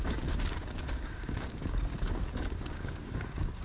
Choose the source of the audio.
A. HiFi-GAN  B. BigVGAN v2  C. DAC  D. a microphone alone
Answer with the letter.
C